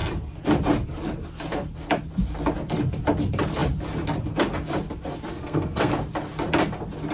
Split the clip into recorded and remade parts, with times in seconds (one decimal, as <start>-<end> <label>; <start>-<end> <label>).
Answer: 0.0-5.3 recorded; 5.3-5.9 remade; 5.9-7.1 recorded